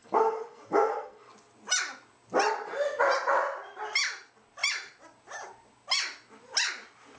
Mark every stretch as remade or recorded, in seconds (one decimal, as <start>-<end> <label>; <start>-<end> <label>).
0.0-1.3 remade; 1.3-7.2 recorded

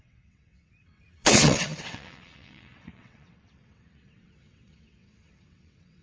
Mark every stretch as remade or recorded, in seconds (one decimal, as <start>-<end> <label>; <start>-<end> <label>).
0.0-6.0 remade